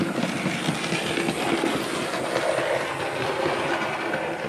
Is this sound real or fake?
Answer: real